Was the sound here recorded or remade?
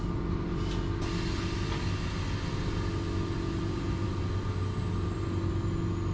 recorded